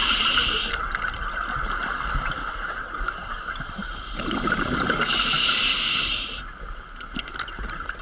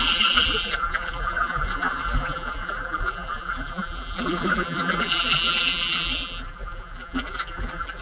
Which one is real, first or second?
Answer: first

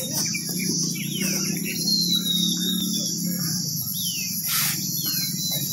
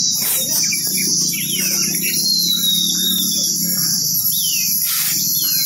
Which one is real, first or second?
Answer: first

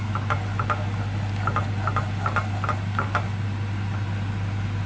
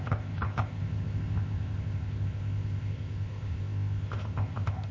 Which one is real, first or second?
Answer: first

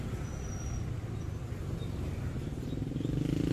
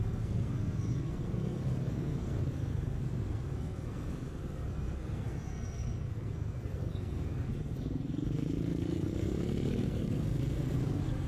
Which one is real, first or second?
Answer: first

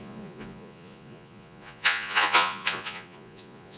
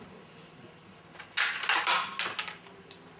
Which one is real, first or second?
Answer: second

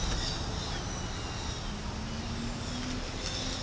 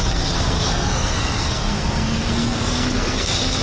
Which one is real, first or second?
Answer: first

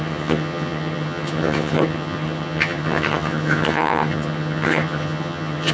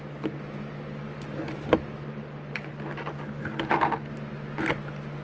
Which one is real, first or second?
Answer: second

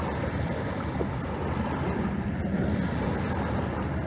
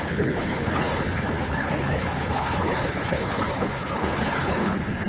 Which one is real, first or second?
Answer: first